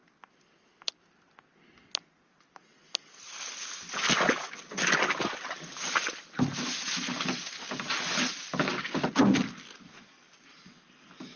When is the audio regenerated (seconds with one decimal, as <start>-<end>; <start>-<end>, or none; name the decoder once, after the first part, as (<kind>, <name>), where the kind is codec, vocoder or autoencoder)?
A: none